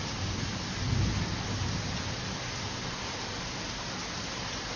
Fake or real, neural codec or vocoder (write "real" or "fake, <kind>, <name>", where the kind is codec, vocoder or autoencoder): real